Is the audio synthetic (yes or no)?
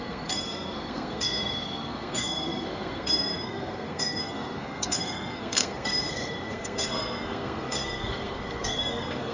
yes